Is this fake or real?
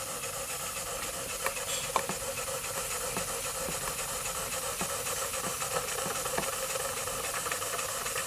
real